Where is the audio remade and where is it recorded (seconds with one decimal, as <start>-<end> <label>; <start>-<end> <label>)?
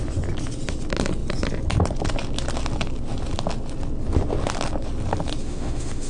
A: 0.0-5.4 recorded; 5.4-6.1 remade